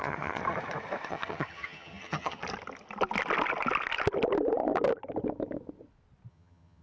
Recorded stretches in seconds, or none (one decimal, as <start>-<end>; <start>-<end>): 0.4-1.1; 2.4-6.3